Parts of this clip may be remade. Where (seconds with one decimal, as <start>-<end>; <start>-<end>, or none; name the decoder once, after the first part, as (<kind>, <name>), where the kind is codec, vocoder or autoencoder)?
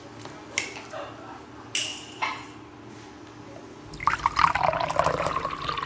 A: none